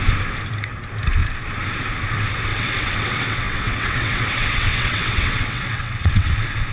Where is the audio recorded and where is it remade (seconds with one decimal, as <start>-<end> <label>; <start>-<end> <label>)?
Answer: 0.0-2.5 recorded; 2.5-6.3 remade; 6.3-6.7 recorded